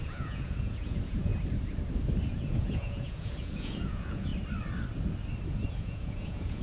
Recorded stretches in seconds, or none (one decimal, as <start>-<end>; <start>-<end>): 1.3-2.3; 4.3-5.7

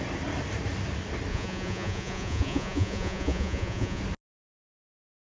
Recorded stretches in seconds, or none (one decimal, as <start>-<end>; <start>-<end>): 0.0-1.3; 4.0-5.2